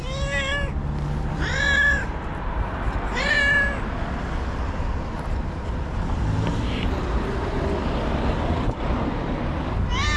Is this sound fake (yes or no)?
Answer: no